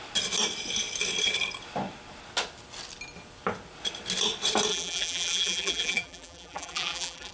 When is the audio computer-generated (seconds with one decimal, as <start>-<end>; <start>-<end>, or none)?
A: 4.7-7.3